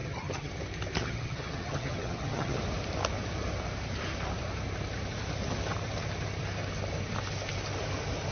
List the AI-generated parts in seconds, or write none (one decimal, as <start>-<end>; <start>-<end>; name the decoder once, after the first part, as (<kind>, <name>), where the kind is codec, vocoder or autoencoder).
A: 0.0-0.5 (vocoder, HiFi-GAN); 1.0-2.6